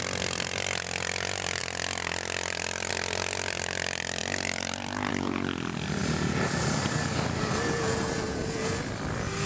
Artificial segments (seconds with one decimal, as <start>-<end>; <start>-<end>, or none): none